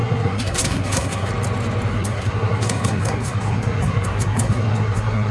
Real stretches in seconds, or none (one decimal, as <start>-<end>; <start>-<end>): 1.3-1.9